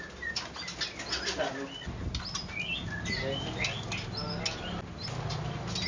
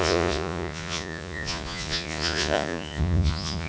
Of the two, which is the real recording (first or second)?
first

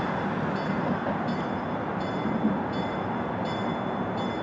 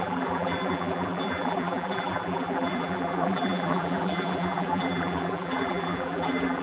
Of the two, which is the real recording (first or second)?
first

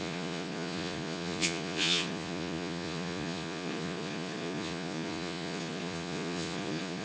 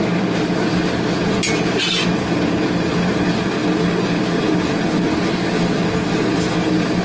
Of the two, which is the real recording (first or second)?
second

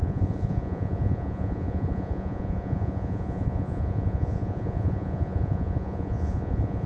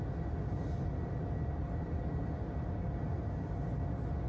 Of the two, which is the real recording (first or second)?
second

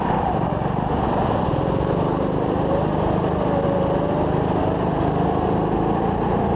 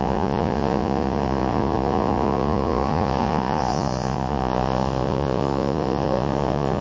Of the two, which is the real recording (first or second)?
first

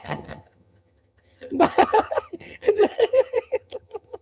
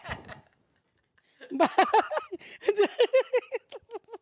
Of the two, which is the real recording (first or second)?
second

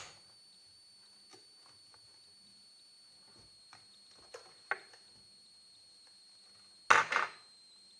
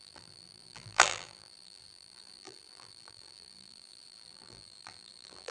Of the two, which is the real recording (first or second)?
first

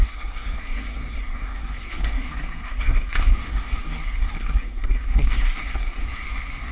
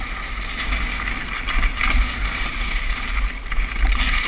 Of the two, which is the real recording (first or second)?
second